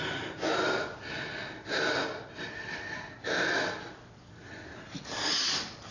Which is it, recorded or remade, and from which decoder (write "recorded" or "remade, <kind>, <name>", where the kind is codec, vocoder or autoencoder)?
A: recorded